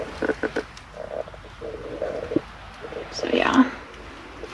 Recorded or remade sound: recorded